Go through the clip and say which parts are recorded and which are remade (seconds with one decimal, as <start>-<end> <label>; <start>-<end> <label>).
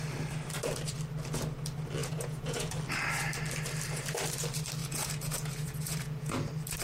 0.0-2.0 recorded; 2.0-2.7 remade; 2.7-4.8 recorded; 4.8-6.3 remade; 6.3-6.8 recorded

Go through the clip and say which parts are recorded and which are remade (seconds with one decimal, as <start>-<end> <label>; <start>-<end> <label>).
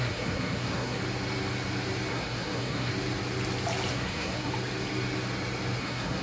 0.0-1.0 remade; 1.0-2.1 recorded; 2.1-2.9 remade; 2.9-3.9 recorded; 3.9-4.5 remade; 4.5-5.8 recorded; 5.8-6.2 remade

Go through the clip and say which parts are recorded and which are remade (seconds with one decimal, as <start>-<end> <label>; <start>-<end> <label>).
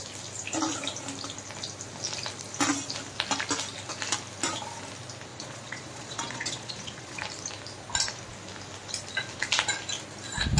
0.0-5.3 recorded; 5.3-7.2 remade; 7.2-10.6 recorded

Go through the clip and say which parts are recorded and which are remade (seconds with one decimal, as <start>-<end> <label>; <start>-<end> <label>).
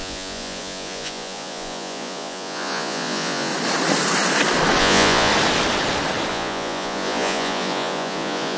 0.0-3.5 remade; 3.5-4.8 recorded; 4.8-5.3 remade; 5.3-6.3 recorded; 6.3-8.6 remade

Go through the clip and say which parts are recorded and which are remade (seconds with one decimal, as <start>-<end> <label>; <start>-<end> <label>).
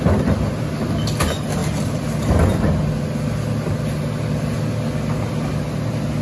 0.0-6.2 recorded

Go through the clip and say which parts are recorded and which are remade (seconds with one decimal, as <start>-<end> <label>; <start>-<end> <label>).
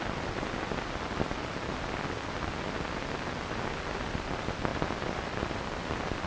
0.0-4.7 recorded; 4.7-6.3 remade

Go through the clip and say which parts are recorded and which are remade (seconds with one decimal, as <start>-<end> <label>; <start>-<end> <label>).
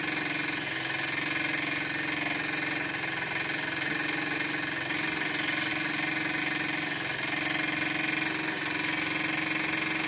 0.0-10.1 recorded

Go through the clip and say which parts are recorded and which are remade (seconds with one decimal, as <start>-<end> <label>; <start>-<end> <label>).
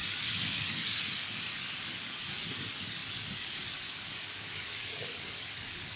0.0-6.0 remade